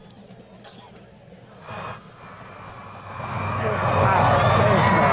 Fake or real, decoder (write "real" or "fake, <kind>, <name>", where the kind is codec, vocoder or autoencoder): real